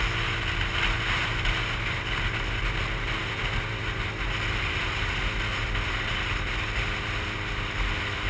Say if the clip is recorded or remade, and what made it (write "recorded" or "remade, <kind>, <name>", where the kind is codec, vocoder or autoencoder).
recorded